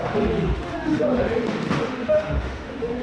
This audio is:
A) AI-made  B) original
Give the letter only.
A